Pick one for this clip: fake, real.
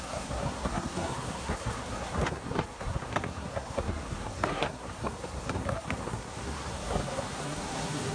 fake